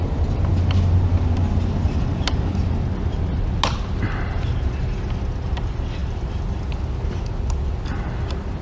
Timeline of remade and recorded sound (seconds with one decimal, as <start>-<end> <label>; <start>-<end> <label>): 0.0-8.6 recorded